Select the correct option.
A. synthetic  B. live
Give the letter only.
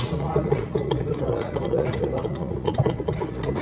A